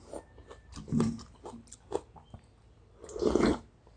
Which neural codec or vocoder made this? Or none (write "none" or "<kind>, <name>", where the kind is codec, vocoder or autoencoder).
none